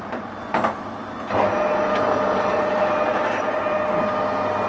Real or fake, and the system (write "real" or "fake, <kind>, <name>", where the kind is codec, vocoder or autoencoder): real